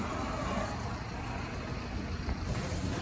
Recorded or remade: recorded